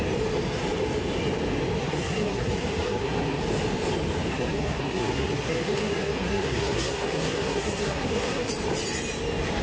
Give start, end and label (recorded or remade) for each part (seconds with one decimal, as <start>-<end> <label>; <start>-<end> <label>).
0.0-1.8 recorded; 1.8-3.4 remade; 3.4-4.3 recorded; 4.3-8.5 remade; 8.5-9.6 recorded